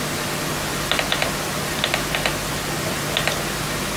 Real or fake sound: real